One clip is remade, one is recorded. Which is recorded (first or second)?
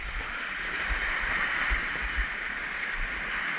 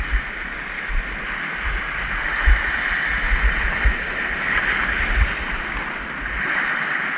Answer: second